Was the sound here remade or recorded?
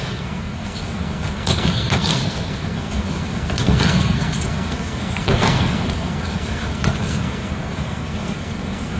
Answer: remade